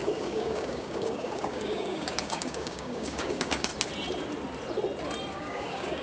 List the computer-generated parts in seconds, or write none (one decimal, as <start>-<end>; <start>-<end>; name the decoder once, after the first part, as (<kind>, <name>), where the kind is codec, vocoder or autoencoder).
0.0-3.7 (codec, DAC); 5.3-6.0